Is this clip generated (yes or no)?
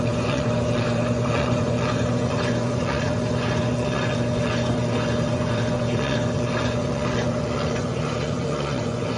yes